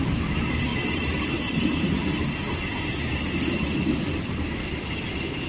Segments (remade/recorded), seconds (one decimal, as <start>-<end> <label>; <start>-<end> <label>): 0.0-0.7 remade; 0.7-3.4 recorded; 3.4-4.6 remade; 4.6-5.5 recorded